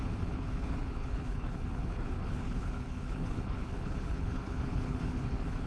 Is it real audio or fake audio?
fake